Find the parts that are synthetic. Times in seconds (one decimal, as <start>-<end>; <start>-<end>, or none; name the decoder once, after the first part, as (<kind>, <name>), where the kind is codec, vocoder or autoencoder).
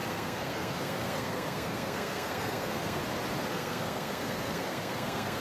0.0-3.0 (codec, SNAC); 3.5-5.4